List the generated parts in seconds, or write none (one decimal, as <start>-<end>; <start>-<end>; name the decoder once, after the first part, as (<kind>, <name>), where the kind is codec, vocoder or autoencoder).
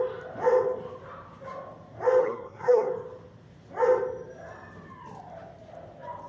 2.2-2.9 (codec, SNAC)